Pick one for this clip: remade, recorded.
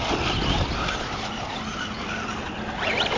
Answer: recorded